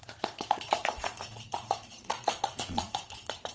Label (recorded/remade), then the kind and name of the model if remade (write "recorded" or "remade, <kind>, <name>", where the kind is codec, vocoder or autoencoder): remade, vocoder, Vocos